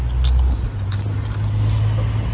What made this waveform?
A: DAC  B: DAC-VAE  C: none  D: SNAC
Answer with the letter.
C